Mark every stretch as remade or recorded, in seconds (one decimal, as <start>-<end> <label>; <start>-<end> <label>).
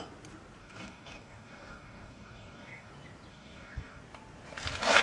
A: 0.0-0.6 recorded; 0.6-2.9 remade; 2.9-3.3 recorded; 3.3-4.0 remade; 4.0-5.0 recorded